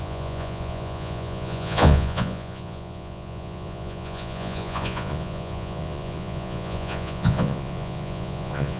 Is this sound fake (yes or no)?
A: yes